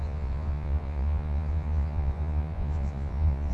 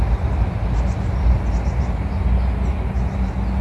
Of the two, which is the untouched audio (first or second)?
second